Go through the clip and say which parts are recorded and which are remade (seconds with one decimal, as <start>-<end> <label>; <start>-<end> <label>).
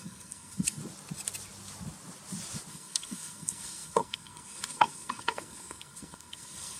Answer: 0.0-0.8 remade; 0.8-2.7 recorded; 2.7-6.8 remade